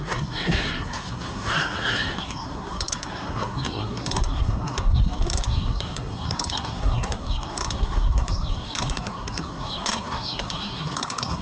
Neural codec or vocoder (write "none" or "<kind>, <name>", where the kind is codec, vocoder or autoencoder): codec, SNAC